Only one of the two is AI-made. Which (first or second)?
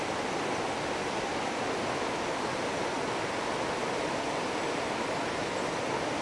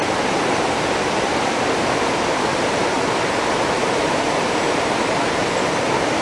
second